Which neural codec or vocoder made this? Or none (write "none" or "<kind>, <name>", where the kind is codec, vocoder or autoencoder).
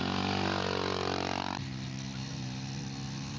none